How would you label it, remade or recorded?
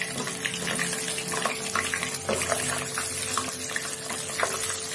recorded